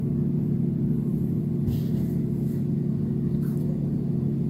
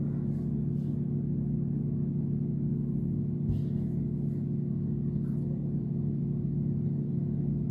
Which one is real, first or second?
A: second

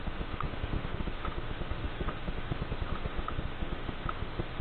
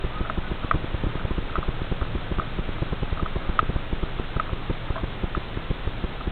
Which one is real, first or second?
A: second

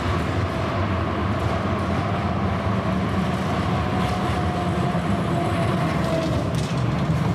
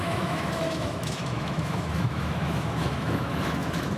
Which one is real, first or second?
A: first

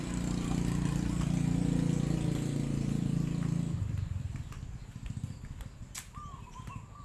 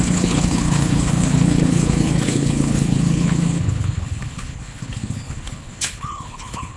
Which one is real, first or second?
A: first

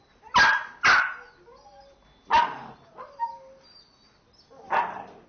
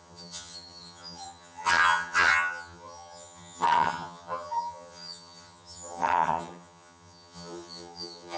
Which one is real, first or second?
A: first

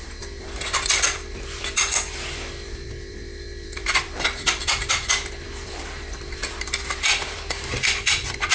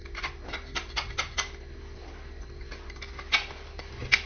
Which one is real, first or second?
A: second